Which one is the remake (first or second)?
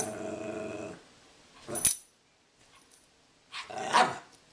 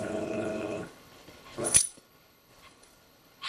second